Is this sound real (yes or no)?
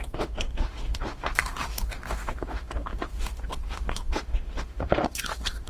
no